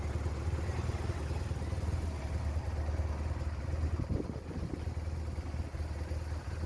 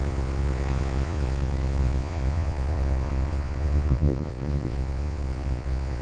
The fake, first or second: second